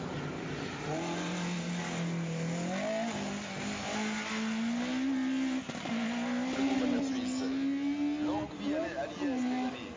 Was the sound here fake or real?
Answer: real